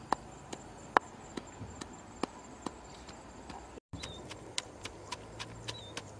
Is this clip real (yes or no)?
no